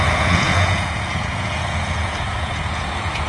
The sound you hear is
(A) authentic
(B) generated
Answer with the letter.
B